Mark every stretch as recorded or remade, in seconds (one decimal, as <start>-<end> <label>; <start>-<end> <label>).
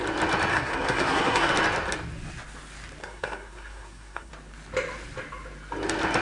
0.0-0.5 recorded; 0.5-1.5 remade; 1.5-3.0 recorded; 3.0-4.3 remade; 4.3-6.2 recorded